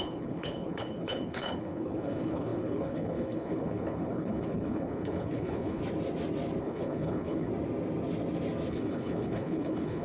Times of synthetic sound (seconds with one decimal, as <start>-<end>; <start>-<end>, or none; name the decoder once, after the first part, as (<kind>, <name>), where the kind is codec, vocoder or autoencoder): 0.0-5.8 (codec, HILCodec); 6.6-7.5; 8.7-10.0